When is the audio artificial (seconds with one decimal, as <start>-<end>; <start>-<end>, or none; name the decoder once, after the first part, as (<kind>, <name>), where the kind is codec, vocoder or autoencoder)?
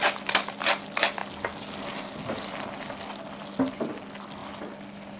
none